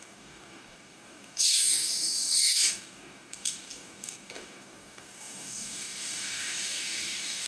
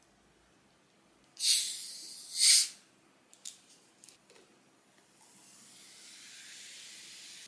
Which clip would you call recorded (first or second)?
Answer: second